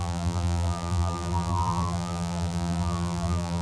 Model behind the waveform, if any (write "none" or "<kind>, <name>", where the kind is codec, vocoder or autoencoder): vocoder, BigVGAN v2